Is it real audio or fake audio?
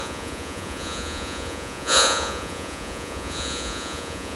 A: fake